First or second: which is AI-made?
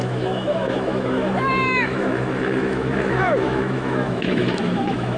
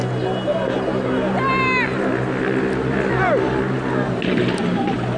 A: first